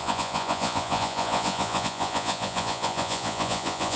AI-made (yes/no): yes